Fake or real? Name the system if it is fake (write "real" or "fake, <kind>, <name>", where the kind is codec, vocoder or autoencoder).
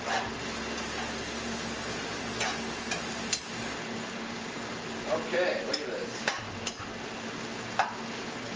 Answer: real